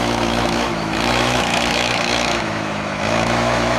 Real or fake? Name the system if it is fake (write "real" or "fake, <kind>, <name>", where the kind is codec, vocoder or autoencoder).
fake, autoencoder, DAC-VAE